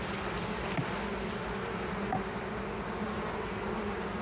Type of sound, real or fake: real